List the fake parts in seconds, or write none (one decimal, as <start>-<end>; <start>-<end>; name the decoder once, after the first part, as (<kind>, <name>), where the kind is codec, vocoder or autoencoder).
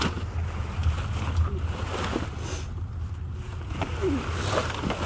none